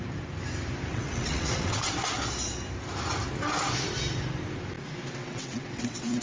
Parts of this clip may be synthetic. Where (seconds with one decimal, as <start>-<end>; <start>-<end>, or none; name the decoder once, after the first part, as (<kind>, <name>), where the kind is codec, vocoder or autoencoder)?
0.9-1.9 (vocoder, WaveNeXt); 5.2-6.2